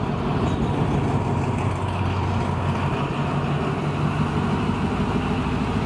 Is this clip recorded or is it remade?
recorded